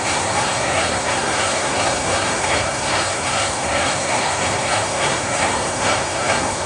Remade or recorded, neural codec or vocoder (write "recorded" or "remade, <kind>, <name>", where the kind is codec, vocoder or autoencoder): remade, codec, SNAC